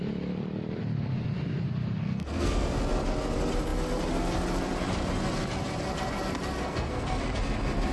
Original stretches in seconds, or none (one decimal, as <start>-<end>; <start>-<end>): 0.0-2.0; 2.8-6.6; 7.2-7.9